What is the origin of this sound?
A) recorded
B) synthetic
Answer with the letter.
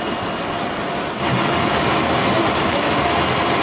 A